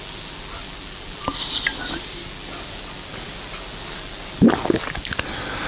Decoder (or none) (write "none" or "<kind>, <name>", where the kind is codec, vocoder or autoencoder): none